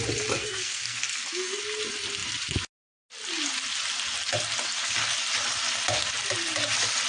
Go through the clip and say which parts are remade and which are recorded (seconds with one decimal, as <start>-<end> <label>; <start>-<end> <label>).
0.0-0.4 recorded; 0.4-1.6 remade; 1.6-7.1 recorded